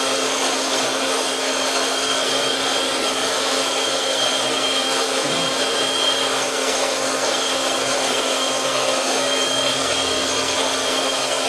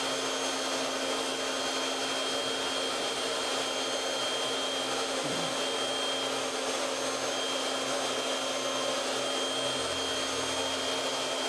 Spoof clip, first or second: first